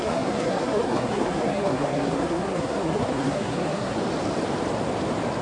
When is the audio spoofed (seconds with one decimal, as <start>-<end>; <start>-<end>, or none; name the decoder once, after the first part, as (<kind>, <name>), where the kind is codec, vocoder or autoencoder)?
0.0-4.0 (codec, SNAC)